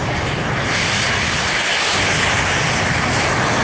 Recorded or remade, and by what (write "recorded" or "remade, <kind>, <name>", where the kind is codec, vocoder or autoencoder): recorded